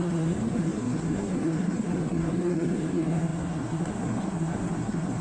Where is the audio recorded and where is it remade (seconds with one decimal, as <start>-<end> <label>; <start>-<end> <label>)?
0.0-5.2 remade